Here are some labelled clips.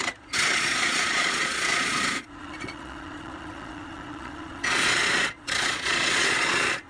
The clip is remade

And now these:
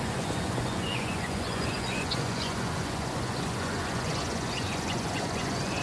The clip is remade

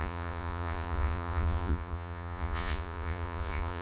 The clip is remade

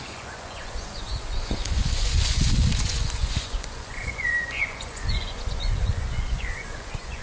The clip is remade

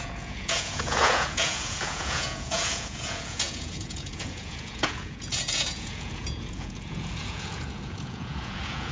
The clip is remade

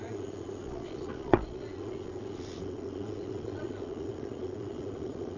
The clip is remade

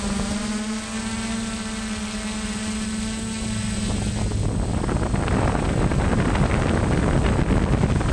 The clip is recorded